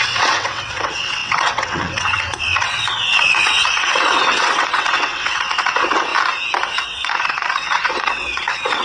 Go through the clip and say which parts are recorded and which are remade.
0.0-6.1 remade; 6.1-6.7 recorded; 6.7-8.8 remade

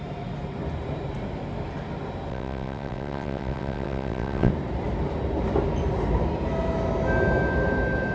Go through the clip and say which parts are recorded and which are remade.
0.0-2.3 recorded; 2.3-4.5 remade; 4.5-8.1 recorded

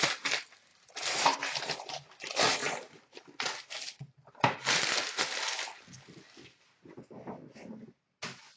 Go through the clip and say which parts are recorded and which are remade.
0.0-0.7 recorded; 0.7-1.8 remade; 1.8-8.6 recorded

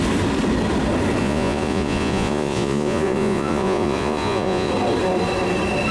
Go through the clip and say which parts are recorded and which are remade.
0.0-1.2 recorded; 1.2-4.7 remade; 4.7-5.9 recorded

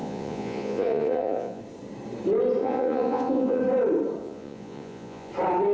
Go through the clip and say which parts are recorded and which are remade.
0.0-1.6 remade; 1.6-2.6 recorded; 2.6-3.6 remade; 3.6-4.2 recorded; 4.2-5.3 remade; 5.3-5.7 recorded